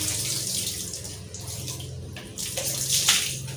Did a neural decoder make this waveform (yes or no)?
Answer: no